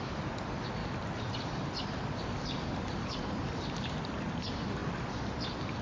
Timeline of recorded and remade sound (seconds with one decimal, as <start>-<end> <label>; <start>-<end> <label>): 0.0-0.8 recorded; 0.8-2.9 remade; 2.9-5.8 recorded